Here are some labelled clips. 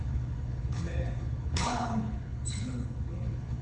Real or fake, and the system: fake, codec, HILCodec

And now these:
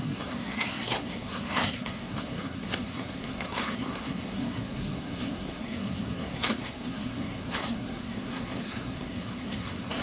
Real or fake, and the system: fake, codec, SNAC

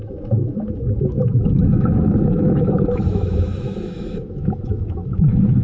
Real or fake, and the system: fake, autoencoder, DAC-VAE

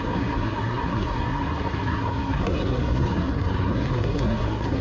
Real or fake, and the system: fake, codec, SNAC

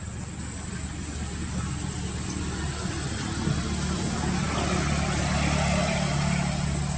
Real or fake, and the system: real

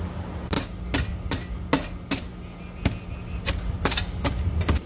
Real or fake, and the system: real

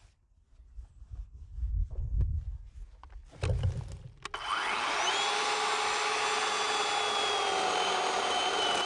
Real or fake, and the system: real